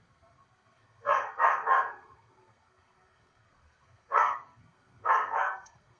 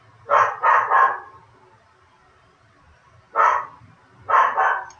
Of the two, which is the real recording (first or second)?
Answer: second